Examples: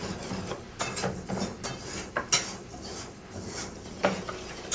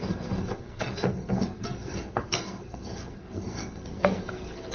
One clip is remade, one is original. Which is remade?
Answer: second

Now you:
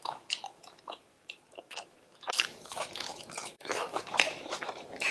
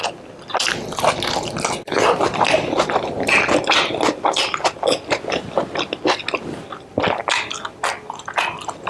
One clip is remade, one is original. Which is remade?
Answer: first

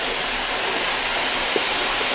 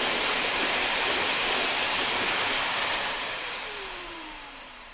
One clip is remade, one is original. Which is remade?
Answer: second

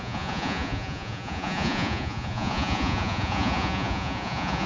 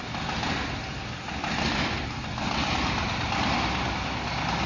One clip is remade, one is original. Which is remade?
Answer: first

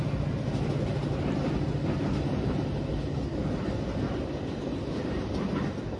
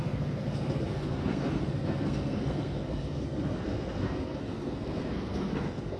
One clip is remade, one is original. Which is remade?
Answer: second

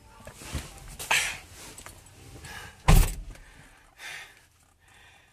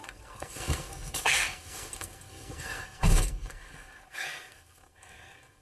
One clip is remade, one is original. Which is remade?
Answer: second